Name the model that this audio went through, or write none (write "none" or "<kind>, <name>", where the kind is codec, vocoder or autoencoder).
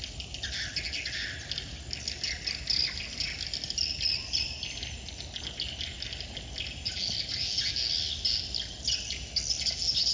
none